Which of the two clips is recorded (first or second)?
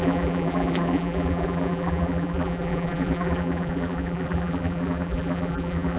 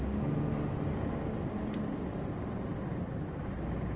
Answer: second